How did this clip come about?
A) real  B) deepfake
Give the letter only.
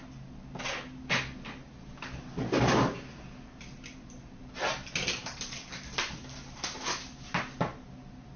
A